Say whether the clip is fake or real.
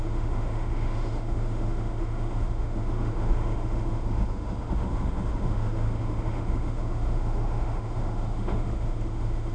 fake